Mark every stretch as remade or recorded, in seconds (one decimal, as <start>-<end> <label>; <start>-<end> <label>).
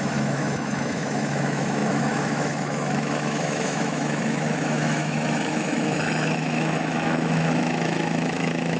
0.0-8.8 remade